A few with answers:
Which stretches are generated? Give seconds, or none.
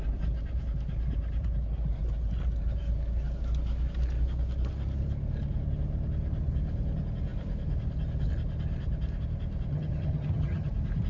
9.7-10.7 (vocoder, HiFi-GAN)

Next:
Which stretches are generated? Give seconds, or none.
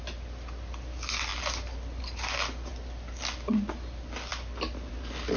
none